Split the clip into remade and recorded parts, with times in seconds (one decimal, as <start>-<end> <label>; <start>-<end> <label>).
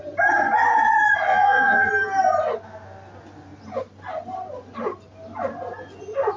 0.0-1.3 recorded; 1.3-1.9 remade; 1.9-6.4 recorded